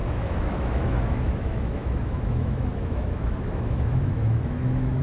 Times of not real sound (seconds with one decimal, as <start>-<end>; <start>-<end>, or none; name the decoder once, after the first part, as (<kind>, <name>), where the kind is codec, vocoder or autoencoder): 0.0-5.0 (autoencoder, DAC-VAE)